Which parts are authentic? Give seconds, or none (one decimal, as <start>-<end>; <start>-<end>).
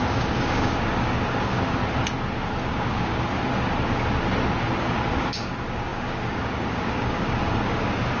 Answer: 1.8-2.6; 3.4-4.8